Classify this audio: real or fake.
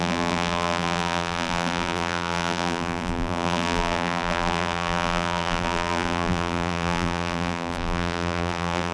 fake